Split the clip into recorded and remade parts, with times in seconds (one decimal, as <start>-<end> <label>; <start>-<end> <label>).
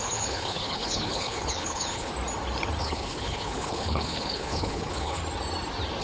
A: 0.0-2.1 remade; 2.1-2.8 recorded; 2.8-5.2 remade; 5.2-6.0 recorded